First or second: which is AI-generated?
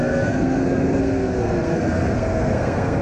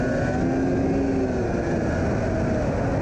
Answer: first